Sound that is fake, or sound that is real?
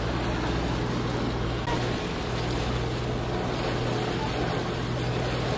real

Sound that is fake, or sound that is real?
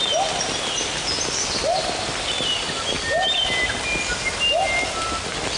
real